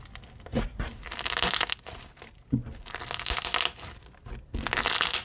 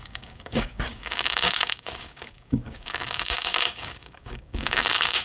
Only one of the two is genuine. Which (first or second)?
first